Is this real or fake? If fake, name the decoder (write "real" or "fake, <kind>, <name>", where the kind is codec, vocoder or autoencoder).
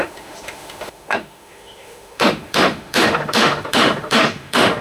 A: fake, autoencoder, DAC-VAE